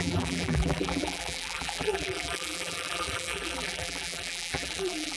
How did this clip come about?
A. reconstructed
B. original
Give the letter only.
A